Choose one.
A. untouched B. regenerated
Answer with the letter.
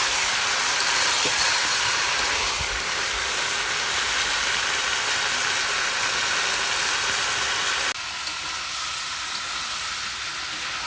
A